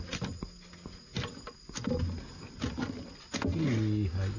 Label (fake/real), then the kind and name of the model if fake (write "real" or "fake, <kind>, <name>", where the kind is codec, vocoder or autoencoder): real